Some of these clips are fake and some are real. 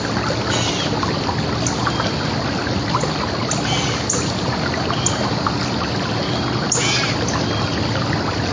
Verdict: real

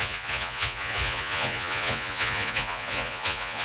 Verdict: fake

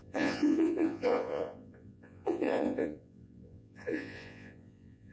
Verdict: fake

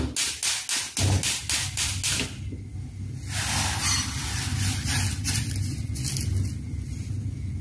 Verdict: real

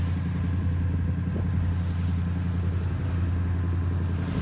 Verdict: real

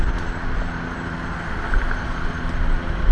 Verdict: real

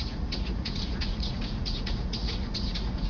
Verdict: fake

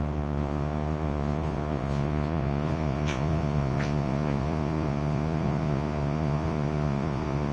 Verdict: fake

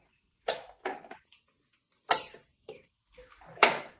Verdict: real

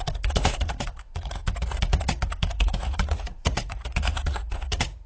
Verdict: fake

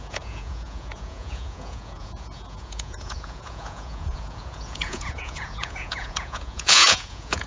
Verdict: fake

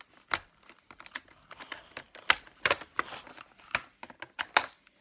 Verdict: real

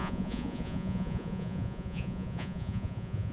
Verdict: fake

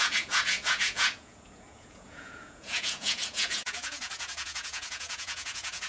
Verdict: fake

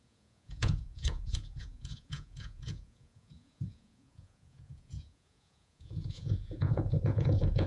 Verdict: fake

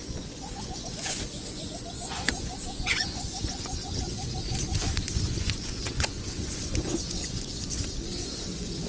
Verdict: fake